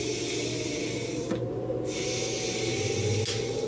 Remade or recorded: recorded